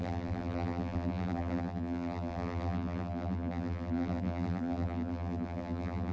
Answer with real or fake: fake